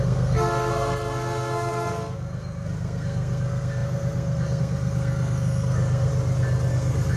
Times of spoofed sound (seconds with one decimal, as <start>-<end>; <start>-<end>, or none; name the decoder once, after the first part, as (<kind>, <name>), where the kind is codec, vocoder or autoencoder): 0.0-6.1 (codec, SNAC); 6.7-7.2